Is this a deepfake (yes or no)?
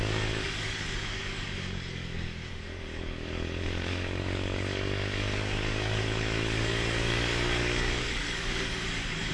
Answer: yes